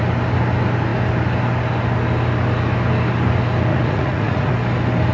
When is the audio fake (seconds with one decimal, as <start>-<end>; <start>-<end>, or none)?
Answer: 3.7-4.5